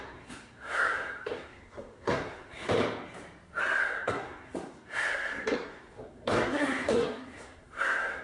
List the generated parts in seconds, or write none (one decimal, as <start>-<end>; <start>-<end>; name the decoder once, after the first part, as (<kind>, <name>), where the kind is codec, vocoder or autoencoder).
0.0-2.7 (codec, SNAC); 3.6-8.2